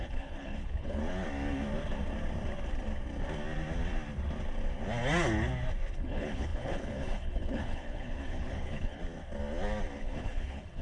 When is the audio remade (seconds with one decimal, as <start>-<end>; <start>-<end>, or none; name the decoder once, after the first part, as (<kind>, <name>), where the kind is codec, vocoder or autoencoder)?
0.0-1.0 (codec, HILCodec); 5.9-9.0; 10.0-10.8